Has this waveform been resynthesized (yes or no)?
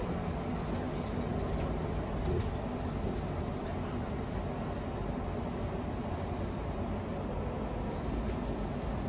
no